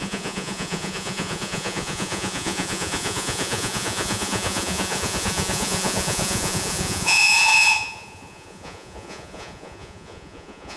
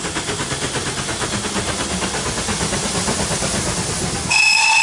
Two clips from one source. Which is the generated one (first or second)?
first